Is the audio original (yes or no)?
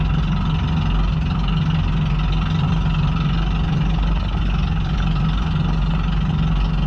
yes